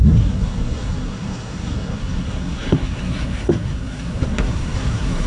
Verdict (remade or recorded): remade